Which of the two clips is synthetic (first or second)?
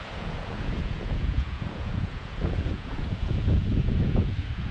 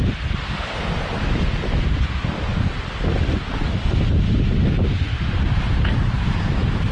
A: first